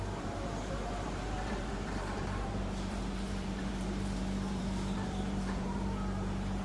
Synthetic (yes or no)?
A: yes